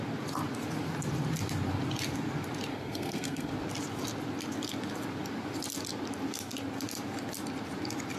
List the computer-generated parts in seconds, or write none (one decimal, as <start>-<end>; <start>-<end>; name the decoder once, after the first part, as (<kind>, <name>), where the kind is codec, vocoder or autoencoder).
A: 2.7-3.5 (codec, SNAC)